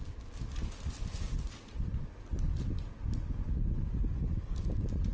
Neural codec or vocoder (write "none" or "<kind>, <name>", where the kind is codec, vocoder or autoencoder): none